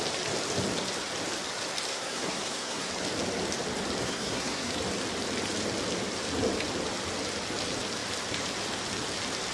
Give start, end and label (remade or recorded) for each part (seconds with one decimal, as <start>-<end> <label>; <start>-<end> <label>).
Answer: 0.0-1.9 recorded; 1.9-2.9 remade; 2.9-4.0 recorded; 4.0-4.7 remade; 4.7-9.5 recorded